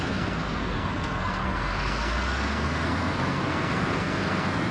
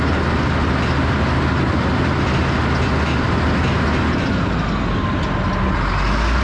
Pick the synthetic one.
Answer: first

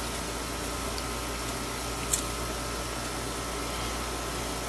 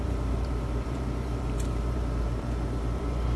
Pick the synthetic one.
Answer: second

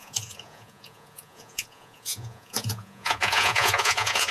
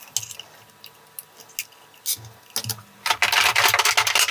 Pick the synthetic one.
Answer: first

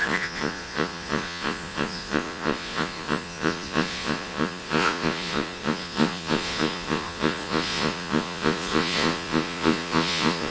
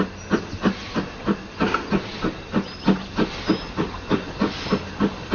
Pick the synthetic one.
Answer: first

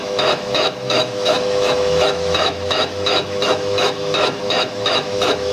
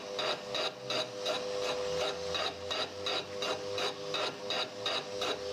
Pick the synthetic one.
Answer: first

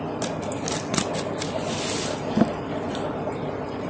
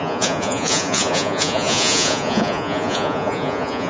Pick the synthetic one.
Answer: second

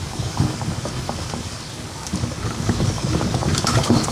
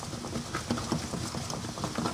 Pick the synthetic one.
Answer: first